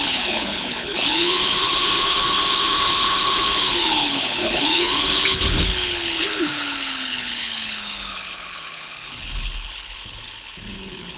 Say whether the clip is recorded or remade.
remade